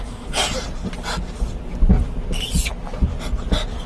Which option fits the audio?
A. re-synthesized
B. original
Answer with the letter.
B